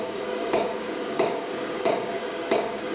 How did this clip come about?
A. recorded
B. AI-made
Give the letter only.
B